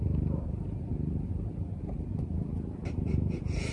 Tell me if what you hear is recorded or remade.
recorded